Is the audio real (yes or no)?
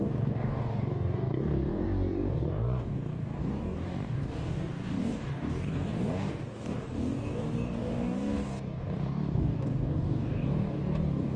no